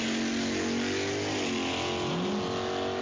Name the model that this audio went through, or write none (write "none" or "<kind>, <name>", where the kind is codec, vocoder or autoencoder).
none